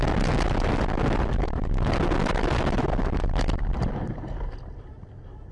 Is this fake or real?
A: real